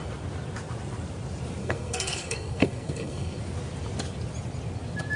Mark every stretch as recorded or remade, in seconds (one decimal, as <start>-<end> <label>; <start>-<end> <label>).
0.0-1.6 recorded; 1.6-3.4 remade; 3.4-5.2 recorded